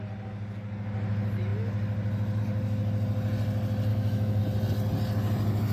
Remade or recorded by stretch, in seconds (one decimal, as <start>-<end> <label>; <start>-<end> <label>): 0.0-3.9 recorded; 3.9-4.4 remade; 4.4-5.7 recorded